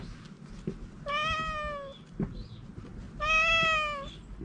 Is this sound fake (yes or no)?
no